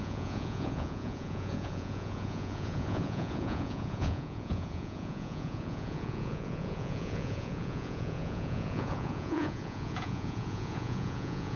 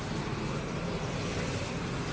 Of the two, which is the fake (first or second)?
first